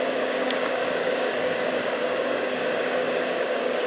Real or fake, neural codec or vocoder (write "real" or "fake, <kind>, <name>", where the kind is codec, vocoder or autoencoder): fake, codec, DAC